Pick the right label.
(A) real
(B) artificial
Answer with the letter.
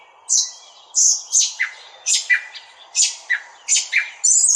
A